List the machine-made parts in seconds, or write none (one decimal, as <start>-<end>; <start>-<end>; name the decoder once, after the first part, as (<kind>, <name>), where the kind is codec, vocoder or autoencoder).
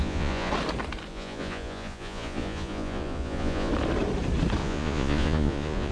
0.0-0.5 (vocoder, Vocos); 1.1-3.7; 4.6-5.9